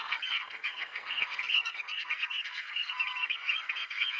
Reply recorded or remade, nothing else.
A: remade